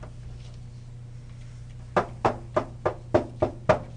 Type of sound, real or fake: real